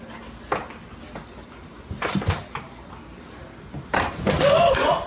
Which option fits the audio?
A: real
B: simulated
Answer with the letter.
A